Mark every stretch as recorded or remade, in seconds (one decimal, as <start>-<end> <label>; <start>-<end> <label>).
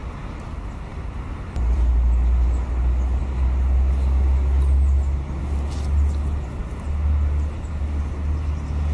0.0-0.9 recorded; 0.9-1.9 remade; 1.9-8.9 recorded